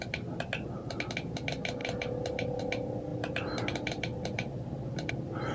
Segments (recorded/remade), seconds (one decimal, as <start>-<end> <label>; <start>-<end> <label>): 0.0-1.8 recorded; 1.8-2.6 remade; 2.6-3.1 recorded; 3.1-5.1 remade; 5.1-5.5 recorded